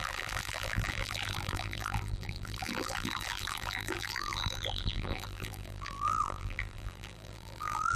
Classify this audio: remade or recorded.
remade